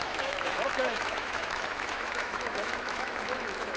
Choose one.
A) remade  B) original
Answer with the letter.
A